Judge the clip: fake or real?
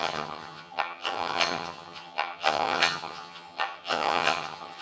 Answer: fake